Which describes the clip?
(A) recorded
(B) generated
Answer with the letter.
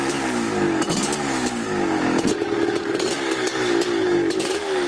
B